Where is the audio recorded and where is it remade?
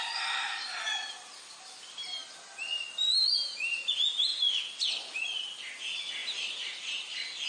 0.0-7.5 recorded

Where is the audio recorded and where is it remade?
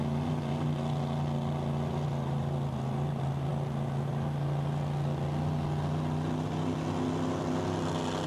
0.0-8.3 recorded